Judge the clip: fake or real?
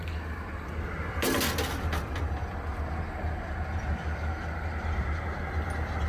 real